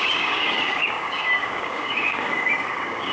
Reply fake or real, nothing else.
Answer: fake